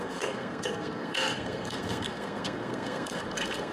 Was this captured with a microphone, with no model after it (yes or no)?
no